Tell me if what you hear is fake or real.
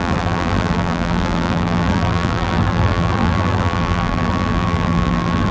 fake